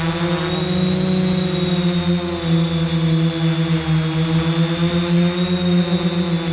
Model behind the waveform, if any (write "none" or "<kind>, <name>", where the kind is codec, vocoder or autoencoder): none